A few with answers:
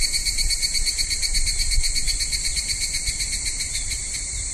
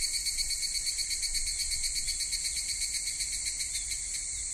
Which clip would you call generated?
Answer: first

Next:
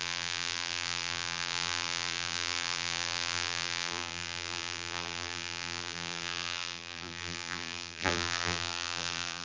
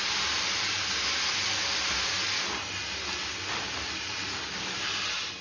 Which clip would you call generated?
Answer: first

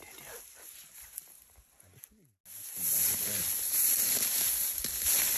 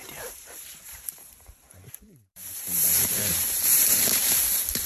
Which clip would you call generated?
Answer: second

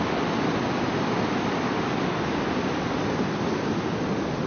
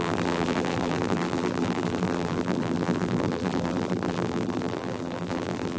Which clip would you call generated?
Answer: second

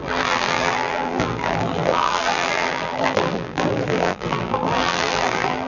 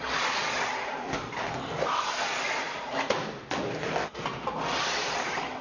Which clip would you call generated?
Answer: first